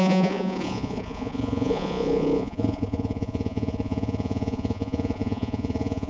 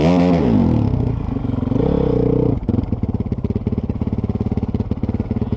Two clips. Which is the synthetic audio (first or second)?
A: first